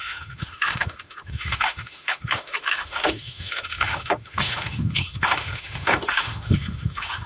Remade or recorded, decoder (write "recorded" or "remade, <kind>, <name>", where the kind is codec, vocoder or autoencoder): remade, autoencoder, DAC-VAE